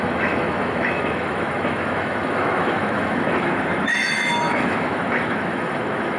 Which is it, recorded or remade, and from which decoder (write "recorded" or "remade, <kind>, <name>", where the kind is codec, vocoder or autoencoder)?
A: remade, autoencoder, DAC-VAE